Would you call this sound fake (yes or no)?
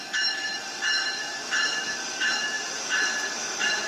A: yes